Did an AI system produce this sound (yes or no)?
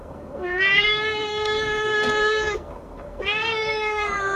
yes